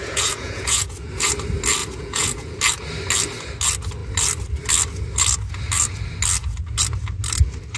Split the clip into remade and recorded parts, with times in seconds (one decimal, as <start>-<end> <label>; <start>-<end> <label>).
0.0-1.3 remade; 1.3-1.8 recorded; 1.8-2.6 remade; 2.6-7.8 recorded